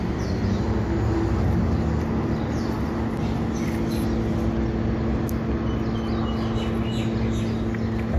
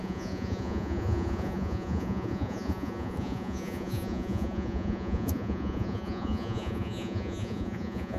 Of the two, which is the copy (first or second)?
second